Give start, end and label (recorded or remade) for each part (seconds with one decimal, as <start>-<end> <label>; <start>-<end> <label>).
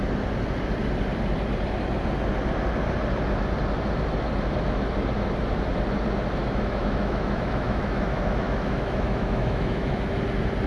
0.0-6.4 recorded; 6.4-10.2 remade; 10.2-10.7 recorded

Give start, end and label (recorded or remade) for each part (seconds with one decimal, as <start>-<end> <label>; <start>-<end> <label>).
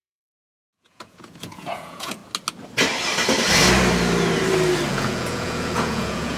0.0-2.2 remade; 2.2-4.9 recorded; 4.9-6.4 remade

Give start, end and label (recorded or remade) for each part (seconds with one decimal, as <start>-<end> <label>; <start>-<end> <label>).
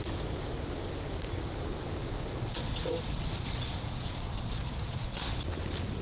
0.0-2.0 recorded; 2.0-5.4 remade; 5.4-6.0 recorded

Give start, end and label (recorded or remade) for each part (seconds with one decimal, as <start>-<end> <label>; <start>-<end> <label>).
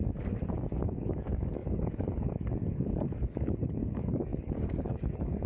0.0-0.8 recorded; 0.8-5.5 remade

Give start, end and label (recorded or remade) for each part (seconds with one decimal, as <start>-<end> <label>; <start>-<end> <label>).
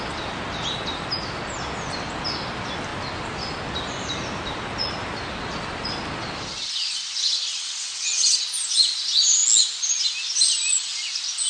0.0-7.5 recorded; 7.5-8.4 remade; 8.4-11.5 recorded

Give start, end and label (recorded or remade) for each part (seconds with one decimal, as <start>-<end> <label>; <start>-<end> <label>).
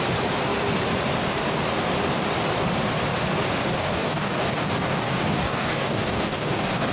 0.0-3.7 recorded; 3.7-6.9 remade